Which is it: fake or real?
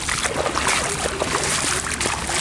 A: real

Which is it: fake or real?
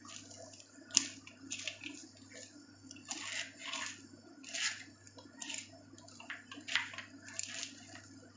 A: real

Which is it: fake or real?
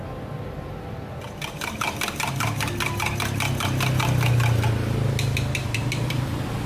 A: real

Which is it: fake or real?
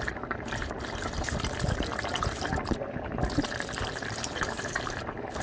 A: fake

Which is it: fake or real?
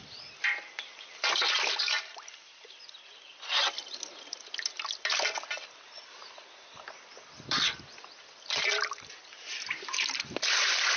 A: fake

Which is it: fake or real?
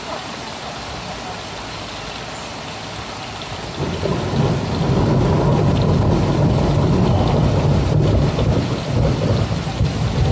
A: real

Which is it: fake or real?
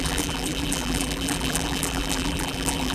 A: fake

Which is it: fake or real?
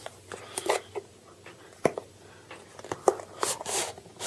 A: real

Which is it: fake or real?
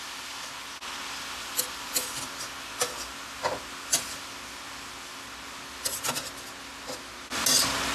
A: real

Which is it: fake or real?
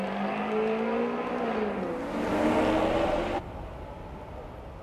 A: real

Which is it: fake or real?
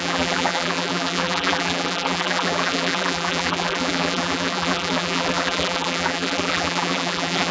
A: fake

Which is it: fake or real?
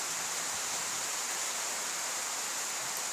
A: fake